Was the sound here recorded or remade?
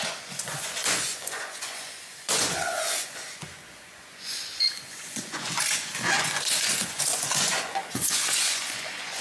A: remade